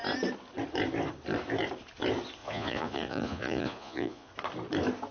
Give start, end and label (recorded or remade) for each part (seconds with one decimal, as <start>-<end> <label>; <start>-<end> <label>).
0.0-2.4 recorded; 2.4-4.3 remade; 4.3-5.1 recorded